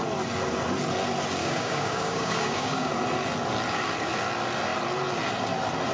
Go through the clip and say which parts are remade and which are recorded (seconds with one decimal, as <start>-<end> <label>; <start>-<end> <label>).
0.0-1.4 recorded; 1.4-2.9 remade; 2.9-5.9 recorded